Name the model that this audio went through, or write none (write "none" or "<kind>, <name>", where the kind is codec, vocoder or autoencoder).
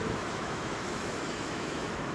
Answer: autoencoder, DAC-VAE